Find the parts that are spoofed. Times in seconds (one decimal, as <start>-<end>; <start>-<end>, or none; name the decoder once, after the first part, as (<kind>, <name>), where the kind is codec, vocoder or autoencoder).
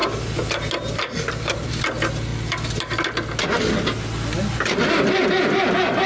0.0-1.8 (vocoder, BigVGAN v2)